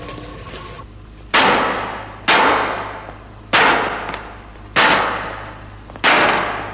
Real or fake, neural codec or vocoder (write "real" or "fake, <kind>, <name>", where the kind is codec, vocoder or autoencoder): real